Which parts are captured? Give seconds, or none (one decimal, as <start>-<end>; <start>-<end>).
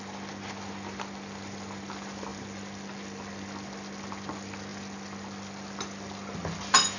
0.0-7.0